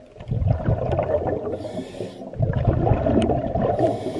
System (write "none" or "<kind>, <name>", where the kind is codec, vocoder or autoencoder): none